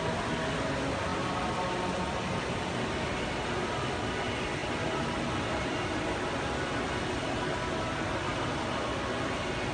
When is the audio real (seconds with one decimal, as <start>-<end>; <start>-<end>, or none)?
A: 0.0-9.7